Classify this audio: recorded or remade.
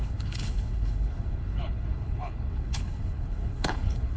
remade